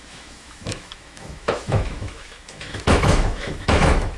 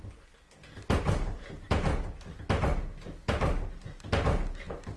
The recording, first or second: second